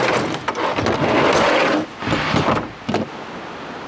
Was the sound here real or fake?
real